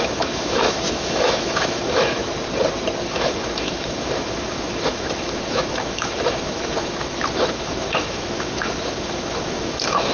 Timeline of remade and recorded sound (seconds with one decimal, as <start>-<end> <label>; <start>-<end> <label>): 0.0-2.3 remade; 2.3-3.0 recorded; 3.0-10.1 remade